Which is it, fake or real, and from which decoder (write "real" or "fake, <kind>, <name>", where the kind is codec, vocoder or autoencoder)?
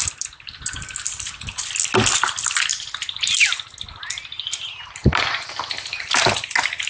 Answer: real